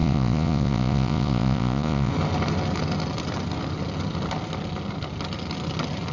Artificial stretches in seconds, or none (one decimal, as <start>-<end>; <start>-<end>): 0.0-2.1